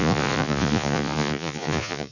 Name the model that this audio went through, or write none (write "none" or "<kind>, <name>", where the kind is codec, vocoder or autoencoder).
vocoder, Vocos